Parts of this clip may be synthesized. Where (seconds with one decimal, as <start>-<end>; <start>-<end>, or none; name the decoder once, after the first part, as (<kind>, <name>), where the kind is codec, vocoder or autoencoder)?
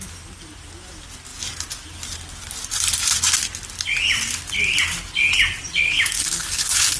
none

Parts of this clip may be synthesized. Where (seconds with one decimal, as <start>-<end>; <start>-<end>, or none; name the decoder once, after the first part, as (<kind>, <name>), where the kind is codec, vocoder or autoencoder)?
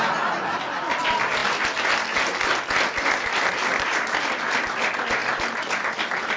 none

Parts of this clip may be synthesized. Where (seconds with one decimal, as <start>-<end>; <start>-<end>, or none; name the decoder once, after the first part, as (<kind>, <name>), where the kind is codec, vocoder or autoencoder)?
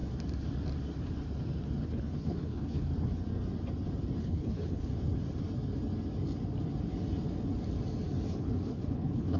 1.8-2.9 (codec, HILCodec); 4.2-4.9; 8.3-9.4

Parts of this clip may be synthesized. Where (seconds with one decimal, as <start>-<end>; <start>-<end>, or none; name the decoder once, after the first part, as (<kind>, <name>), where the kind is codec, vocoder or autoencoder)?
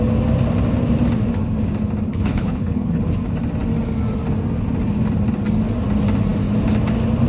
2.1-3.0 (codec, HILCodec)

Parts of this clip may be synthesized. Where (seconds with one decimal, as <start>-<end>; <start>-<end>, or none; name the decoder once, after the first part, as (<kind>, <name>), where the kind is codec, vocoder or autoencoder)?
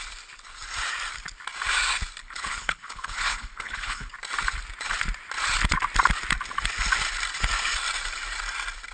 2.2-4.1 (codec, HILCodec)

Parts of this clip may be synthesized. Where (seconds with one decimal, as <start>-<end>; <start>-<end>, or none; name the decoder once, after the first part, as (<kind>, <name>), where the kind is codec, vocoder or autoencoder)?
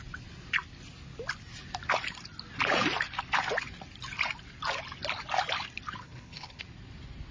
6.0-6.6 (codec, HILCodec)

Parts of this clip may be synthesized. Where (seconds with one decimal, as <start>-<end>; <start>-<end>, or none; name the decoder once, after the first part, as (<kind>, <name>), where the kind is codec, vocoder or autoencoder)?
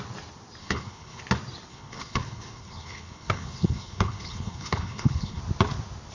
0.6-1.2 (codec, HILCodec); 1.7-5.4